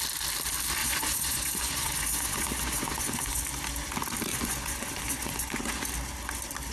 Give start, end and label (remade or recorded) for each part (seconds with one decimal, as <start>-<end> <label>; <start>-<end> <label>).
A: 0.0-0.8 recorded; 0.8-3.4 remade; 3.4-4.3 recorded; 4.3-5.7 remade; 5.7-6.7 recorded